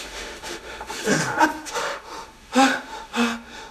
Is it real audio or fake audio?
fake